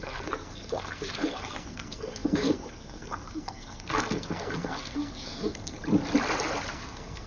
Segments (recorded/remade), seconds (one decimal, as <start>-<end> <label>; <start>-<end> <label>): 0.0-5.8 remade; 5.8-6.7 recorded; 6.7-7.3 remade